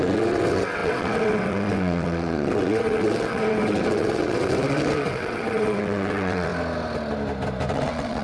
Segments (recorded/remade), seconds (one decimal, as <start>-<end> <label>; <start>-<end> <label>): 0.0-6.5 remade; 6.5-7.7 recorded; 7.7-8.2 remade